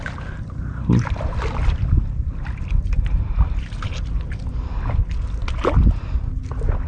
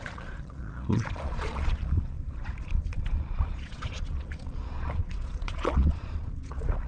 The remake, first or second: second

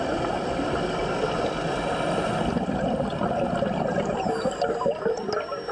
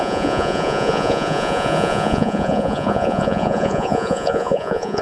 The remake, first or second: second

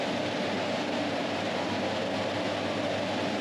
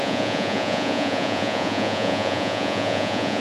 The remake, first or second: second